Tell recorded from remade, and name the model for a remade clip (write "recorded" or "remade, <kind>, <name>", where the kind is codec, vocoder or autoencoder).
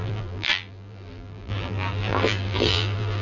remade, vocoder, BigVGAN v2